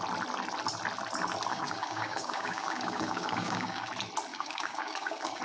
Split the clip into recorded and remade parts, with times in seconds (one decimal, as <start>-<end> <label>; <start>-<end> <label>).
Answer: 0.0-1.5 recorded; 1.5-3.9 remade; 3.9-4.3 recorded; 4.3-5.4 remade

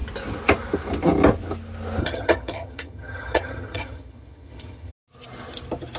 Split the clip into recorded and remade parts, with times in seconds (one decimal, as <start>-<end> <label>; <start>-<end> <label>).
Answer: 0.0-2.0 recorded; 2.0-4.9 remade; 4.9-6.0 recorded